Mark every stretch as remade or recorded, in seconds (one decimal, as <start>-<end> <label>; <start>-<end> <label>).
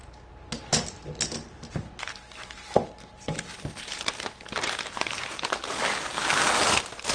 0.0-4.0 recorded; 4.0-5.6 remade; 5.6-7.1 recorded